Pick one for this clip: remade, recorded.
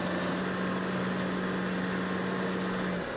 recorded